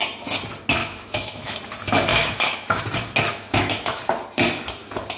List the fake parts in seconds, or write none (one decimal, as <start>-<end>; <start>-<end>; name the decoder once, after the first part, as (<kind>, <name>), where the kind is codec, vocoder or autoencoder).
0.8-1.5 (autoencoder, DAC-VAE); 2.1-2.8; 3.3-4.0